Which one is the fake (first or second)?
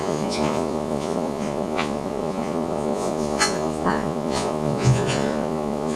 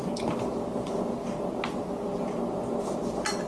first